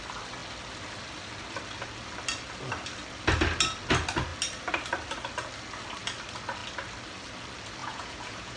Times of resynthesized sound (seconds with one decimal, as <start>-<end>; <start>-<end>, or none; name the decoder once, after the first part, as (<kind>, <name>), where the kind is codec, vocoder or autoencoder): 7.8-8.6 (vocoder, Vocos)